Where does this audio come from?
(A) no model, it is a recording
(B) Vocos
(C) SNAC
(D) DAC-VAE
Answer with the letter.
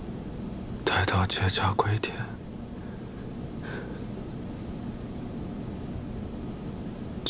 A